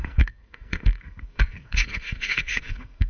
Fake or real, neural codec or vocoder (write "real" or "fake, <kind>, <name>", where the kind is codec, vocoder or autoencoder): fake, codec, SNAC